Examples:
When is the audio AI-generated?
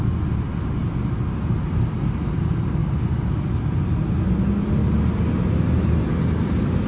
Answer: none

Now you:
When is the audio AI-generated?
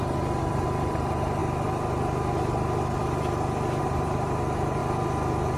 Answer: 0.0-1.4 (vocoder, BigVGAN v2); 3.8-4.8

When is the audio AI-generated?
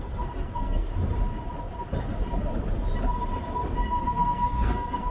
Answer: 0.0-0.9 (codec, SNAC); 4.0-5.1